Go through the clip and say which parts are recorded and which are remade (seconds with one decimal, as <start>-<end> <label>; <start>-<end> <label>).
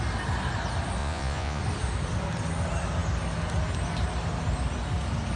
0.0-1.0 recorded; 1.0-1.6 remade; 1.6-5.4 recorded